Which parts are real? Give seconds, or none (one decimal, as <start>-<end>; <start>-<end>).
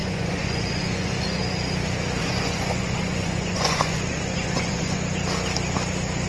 1.4-2.2; 5.0-6.3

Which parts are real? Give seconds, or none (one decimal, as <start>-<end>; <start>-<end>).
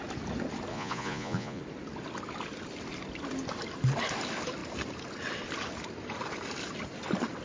0.0-0.7; 1.6-7.4